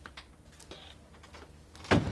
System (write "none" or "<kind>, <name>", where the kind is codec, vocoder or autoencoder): none